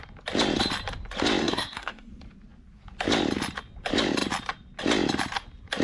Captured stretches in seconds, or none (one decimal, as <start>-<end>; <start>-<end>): 0.0-1.4; 2.1-5.8